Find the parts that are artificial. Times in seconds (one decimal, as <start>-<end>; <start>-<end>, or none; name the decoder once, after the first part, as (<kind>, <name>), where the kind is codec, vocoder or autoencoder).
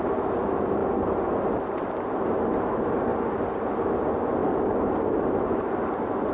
4.4-5.0 (vocoder, BigVGAN v2)